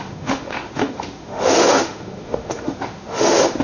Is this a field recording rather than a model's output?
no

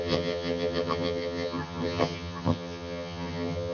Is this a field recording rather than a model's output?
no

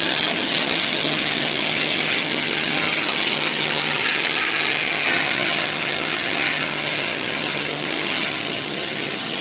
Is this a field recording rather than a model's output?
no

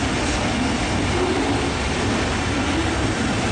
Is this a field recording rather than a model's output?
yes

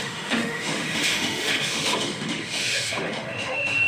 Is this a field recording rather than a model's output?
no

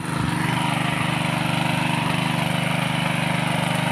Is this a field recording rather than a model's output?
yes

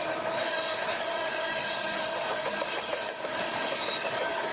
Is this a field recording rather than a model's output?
no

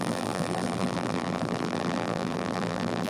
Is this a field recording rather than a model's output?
no